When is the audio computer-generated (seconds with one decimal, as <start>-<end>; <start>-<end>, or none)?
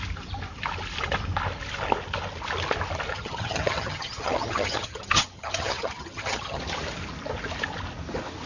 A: 3.1-6.6